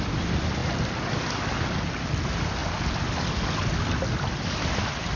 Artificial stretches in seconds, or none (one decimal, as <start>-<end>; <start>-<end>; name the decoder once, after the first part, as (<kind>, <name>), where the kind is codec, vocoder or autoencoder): none